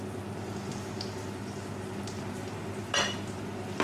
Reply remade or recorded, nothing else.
recorded